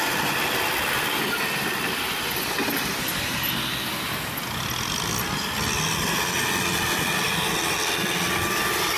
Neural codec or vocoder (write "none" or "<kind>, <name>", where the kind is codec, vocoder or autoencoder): none